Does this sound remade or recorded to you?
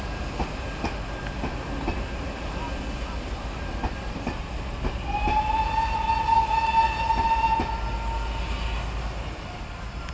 recorded